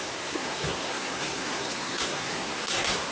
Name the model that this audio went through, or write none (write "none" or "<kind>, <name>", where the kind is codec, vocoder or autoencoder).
codec, SNAC